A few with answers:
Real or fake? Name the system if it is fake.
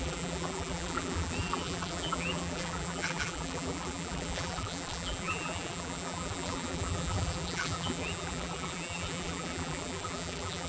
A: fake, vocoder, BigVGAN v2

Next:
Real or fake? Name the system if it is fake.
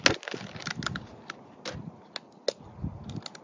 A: real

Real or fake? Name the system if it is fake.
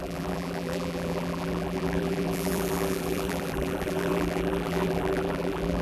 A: fake, vocoder, BigVGAN v2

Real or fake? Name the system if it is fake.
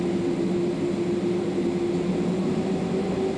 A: real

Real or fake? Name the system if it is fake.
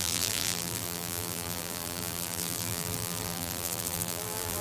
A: fake, vocoder, BigVGAN v2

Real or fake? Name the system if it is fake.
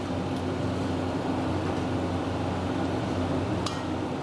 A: real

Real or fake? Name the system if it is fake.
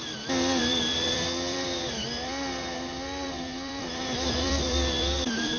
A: fake, vocoder, BigVGAN v2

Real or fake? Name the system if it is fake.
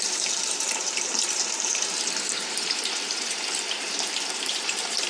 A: fake, vocoder, BigVGAN v2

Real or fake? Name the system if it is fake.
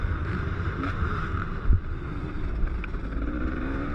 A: fake, vocoder, BigVGAN v2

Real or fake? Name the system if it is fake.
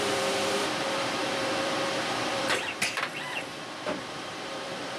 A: fake, vocoder, BigVGAN v2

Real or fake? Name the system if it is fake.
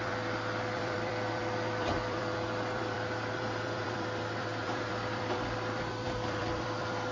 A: fake, vocoder, BigVGAN v2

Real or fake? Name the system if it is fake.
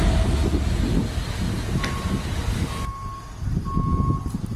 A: real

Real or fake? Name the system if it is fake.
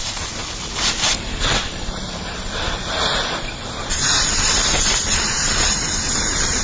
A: fake, vocoder, BigVGAN v2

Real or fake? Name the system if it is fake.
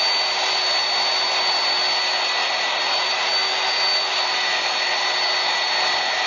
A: real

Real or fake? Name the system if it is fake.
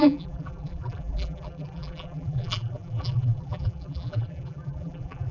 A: fake, vocoder, BigVGAN v2